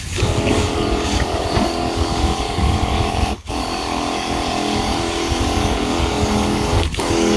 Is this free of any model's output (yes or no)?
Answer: no